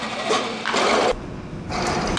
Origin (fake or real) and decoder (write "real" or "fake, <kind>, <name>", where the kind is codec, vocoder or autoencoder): real